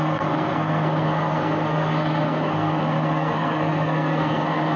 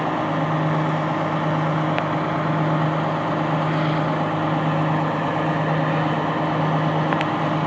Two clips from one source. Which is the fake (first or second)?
first